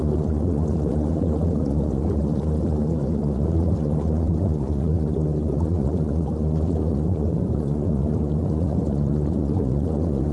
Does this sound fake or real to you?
fake